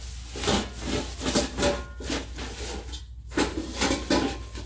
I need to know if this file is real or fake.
real